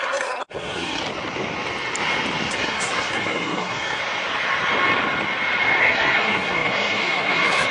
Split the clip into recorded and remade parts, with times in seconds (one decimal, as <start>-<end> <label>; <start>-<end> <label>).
0.0-1.0 remade; 1.0-2.5 recorded; 2.5-4.0 remade; 4.0-5.8 recorded; 5.8-7.7 remade